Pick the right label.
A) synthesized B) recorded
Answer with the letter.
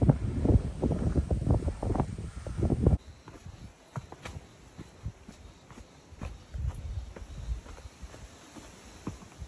B